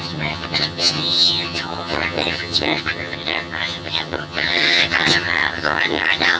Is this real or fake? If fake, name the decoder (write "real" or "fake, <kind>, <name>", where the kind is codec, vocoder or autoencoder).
fake, vocoder, HiFi-GAN